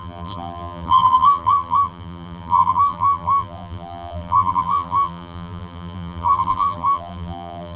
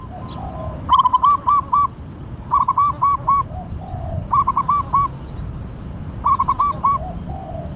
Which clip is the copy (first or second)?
first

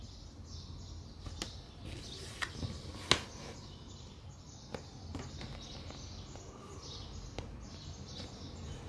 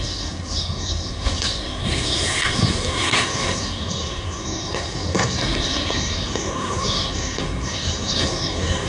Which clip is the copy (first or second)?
second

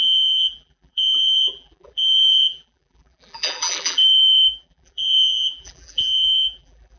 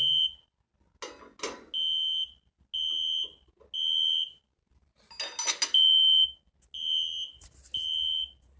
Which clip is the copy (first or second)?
first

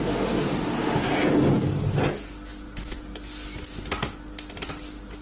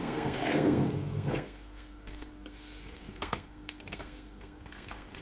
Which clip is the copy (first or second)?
second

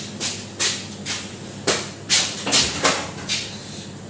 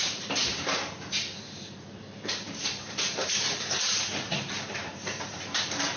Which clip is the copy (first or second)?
second